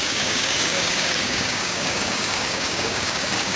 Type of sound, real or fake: fake